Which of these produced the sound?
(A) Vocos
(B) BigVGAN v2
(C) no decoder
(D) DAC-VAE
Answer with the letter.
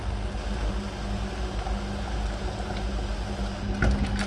C